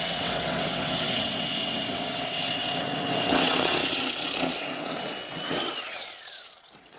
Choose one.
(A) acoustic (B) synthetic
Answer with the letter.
B